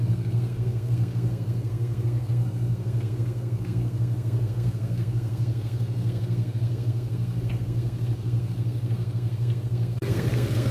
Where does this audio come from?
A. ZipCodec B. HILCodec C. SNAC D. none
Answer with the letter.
C